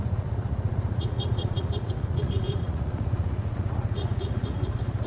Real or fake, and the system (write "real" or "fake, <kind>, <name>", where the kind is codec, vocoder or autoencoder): fake, vocoder, Vocos